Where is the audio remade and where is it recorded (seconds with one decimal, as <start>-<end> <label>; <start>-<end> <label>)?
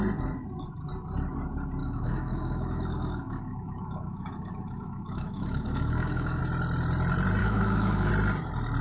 0.0-1.8 recorded; 1.8-6.4 remade; 6.4-7.4 recorded; 7.4-8.1 remade; 8.1-8.8 recorded